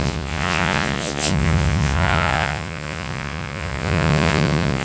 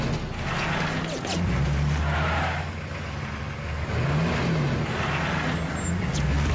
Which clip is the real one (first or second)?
second